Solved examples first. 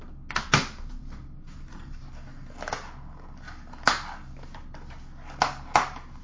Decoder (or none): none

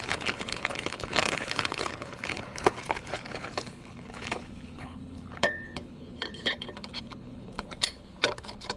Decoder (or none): codec, HILCodec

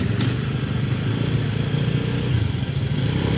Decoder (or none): none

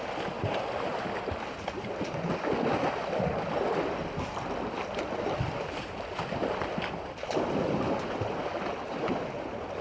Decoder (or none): none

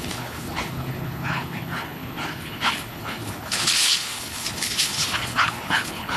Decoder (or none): codec, HILCodec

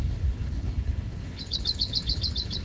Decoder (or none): codec, HILCodec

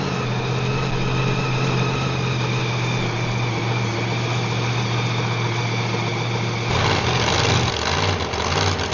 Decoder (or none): none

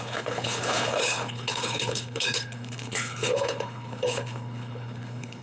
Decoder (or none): codec, HILCodec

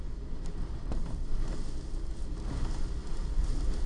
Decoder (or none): none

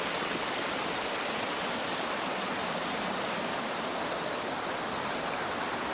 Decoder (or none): none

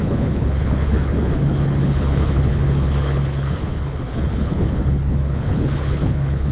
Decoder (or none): codec, HILCodec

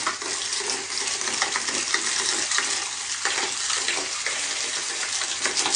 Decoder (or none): none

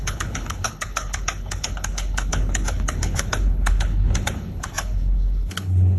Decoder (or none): codec, HILCodec